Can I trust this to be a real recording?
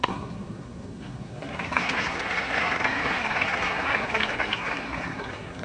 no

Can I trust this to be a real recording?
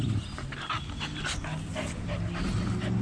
yes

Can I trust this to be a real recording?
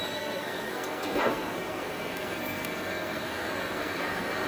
no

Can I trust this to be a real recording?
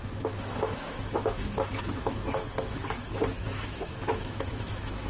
no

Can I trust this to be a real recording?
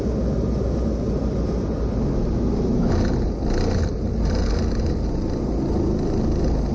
yes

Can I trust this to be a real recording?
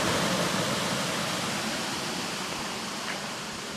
yes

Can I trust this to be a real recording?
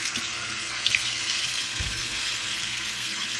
no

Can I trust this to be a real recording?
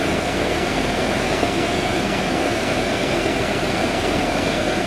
no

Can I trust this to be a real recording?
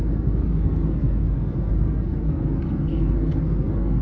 no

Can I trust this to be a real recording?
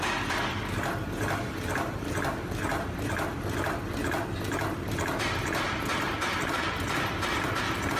yes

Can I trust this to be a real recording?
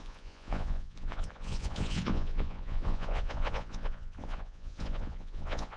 no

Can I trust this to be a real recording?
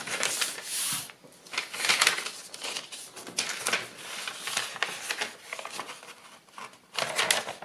yes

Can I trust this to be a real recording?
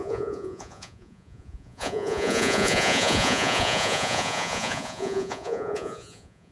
no